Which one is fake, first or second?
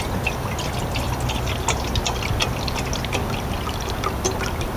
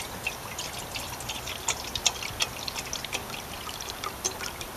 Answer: second